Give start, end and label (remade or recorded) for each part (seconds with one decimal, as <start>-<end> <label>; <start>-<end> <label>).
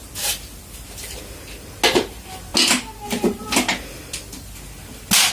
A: 0.0-5.3 recorded